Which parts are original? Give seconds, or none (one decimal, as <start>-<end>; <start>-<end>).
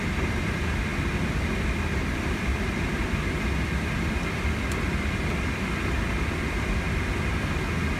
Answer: 0.0-8.0